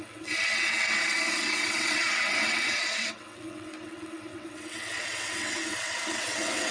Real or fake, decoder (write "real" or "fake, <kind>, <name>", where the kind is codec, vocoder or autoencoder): fake, vocoder, WaveNeXt